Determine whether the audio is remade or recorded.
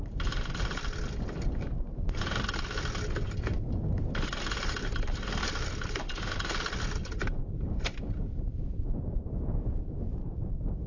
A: recorded